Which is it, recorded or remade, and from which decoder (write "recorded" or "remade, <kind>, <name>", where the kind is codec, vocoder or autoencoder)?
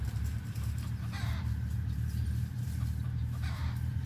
remade, vocoder, BigVGAN v2